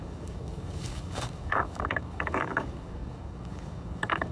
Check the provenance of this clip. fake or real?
fake